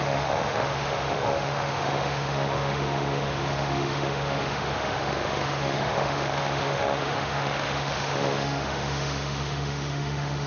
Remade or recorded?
remade